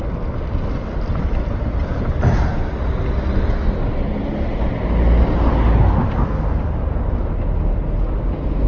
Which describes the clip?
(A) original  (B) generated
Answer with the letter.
A